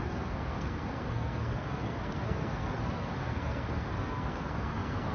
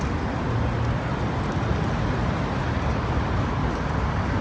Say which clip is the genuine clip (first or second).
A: second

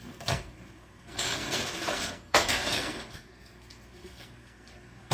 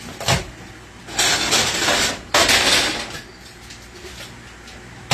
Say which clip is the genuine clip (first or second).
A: second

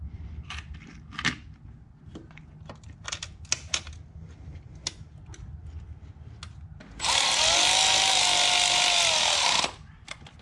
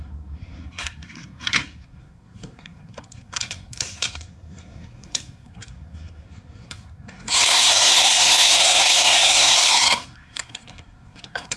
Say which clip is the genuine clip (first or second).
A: first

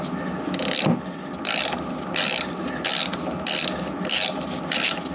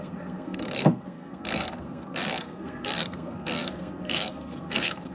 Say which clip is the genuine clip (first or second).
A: first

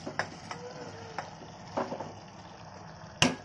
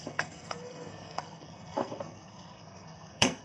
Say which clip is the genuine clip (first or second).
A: first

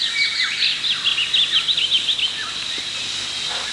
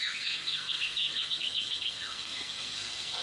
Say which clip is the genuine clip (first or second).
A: first